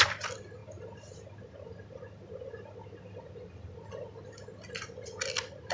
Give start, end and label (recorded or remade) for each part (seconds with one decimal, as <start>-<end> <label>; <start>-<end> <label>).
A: 0.0-5.7 recorded

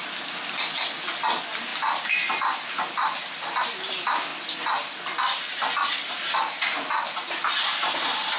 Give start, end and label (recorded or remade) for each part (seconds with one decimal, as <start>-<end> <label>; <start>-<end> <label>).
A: 0.0-8.4 remade

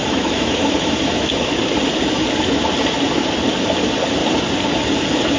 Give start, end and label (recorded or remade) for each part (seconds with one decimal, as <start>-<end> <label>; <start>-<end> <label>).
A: 0.0-1.3 remade; 1.3-5.4 recorded

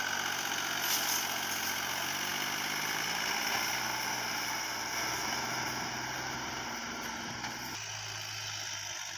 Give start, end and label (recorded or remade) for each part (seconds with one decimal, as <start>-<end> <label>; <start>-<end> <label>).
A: 0.0-9.2 recorded

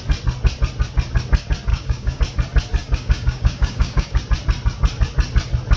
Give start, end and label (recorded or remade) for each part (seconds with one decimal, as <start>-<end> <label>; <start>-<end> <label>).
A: 0.0-1.7 recorded; 1.7-2.2 remade; 2.2-2.8 recorded; 2.8-4.2 remade; 4.2-5.8 recorded

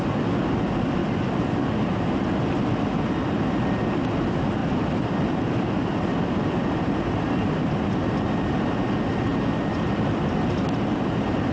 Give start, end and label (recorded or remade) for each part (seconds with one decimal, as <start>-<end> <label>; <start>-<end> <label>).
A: 0.0-1.0 recorded; 1.0-2.2 remade; 2.2-4.6 recorded; 4.6-5.2 remade; 5.2-6.1 recorded; 6.1-8.5 remade; 8.5-9.3 recorded; 9.3-10.3 remade; 10.3-11.5 recorded